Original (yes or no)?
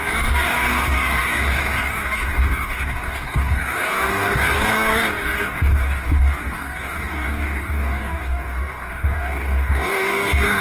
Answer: no